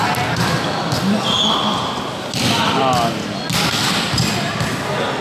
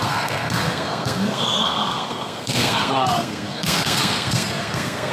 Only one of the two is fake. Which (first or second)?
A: second